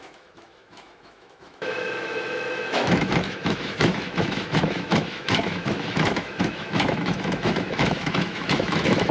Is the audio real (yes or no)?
no